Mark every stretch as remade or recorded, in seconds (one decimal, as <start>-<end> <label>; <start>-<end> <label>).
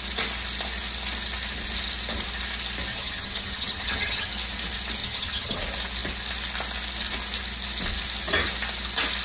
0.0-2.9 recorded; 2.9-4.3 remade; 4.3-5.0 recorded; 5.0-5.6 remade; 5.6-9.2 recorded